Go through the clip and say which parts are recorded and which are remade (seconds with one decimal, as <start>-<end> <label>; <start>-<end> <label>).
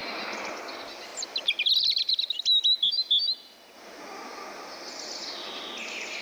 0.0-0.7 remade; 0.7-6.2 recorded